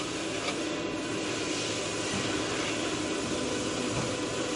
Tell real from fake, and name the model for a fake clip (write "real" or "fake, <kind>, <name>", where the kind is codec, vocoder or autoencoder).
real